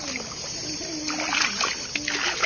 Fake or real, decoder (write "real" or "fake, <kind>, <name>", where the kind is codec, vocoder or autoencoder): real